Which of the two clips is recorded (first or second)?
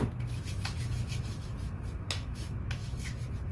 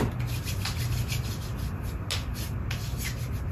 second